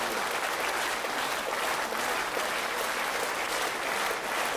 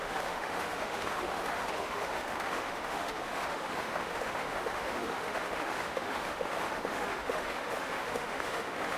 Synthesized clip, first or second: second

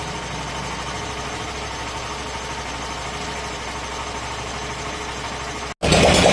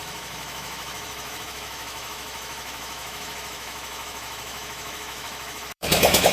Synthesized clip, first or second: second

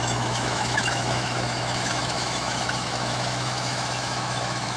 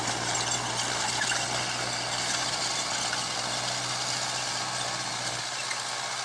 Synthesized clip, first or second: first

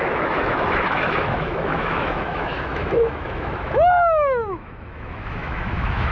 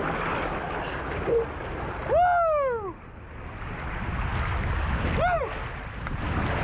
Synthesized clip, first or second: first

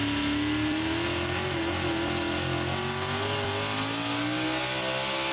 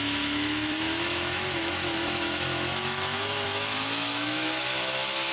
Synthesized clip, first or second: second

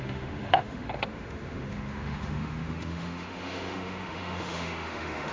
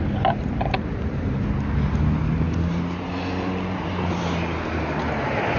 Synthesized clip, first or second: first